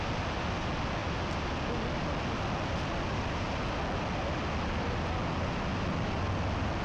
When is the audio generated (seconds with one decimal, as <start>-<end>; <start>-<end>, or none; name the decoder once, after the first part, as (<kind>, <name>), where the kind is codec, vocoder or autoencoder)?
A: none